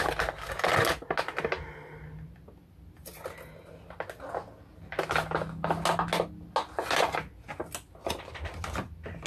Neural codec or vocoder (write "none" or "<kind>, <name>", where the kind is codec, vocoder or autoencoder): none